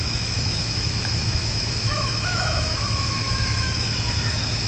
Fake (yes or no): yes